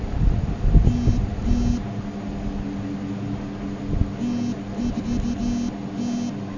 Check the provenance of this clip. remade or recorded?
recorded